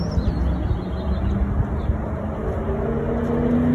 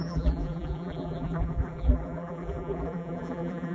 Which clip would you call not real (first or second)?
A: second